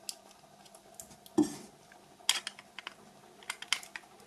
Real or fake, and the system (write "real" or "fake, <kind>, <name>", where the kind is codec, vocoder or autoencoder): real